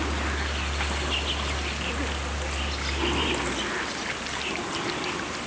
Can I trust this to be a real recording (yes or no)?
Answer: yes